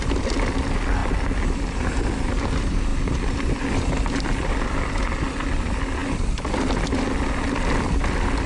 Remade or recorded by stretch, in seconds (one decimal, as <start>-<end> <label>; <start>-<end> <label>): 0.0-8.5 recorded